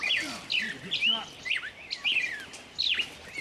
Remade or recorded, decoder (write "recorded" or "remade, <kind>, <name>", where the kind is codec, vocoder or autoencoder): recorded